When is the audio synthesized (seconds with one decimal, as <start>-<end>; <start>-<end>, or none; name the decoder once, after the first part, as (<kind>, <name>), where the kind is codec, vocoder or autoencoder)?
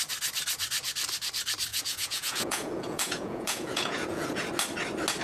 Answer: 1.7-4.5 (vocoder, Vocos)